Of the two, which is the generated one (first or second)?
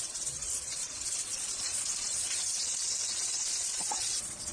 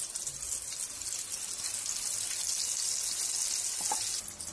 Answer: first